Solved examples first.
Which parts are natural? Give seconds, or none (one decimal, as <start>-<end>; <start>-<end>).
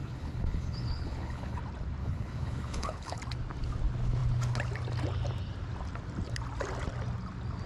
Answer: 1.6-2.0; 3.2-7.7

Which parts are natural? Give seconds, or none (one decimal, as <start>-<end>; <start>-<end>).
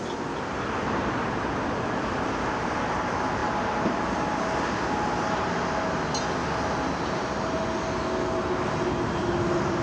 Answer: 0.0-9.8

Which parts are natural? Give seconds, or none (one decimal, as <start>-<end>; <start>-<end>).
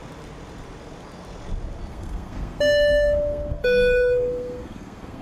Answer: 0.0-1.9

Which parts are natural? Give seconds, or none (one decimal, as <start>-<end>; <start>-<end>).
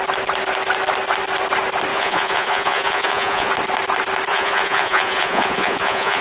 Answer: 0.0-1.9; 3.5-4.3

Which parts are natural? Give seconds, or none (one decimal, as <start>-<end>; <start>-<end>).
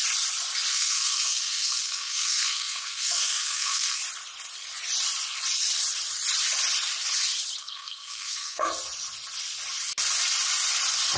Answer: 0.0-0.7; 4.0-7.6; 8.7-11.2